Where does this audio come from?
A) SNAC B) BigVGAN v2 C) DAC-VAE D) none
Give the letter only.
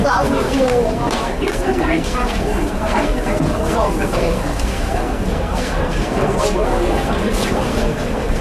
A